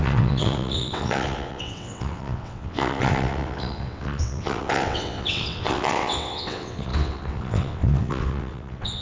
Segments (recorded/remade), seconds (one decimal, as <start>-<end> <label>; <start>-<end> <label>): 0.0-9.0 remade